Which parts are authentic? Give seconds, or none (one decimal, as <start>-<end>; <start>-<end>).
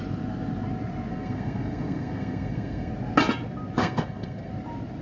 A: 0.0-1.1; 2.9-3.8; 4.5-5.0